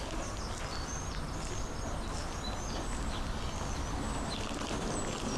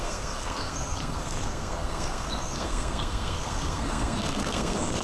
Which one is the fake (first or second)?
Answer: second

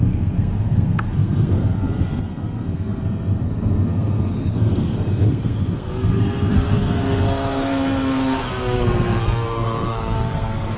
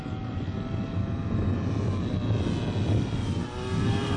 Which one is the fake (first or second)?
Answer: first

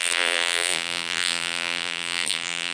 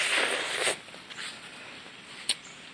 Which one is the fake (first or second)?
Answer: first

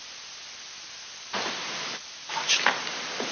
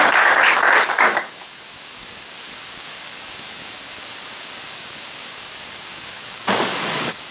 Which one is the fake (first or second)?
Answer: second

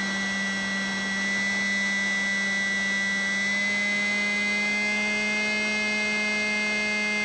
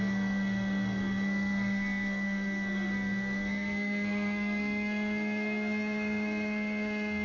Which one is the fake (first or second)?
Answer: second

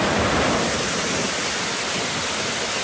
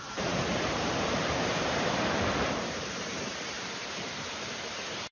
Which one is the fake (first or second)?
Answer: second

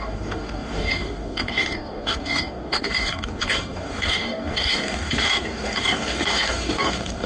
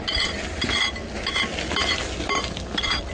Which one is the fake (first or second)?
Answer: first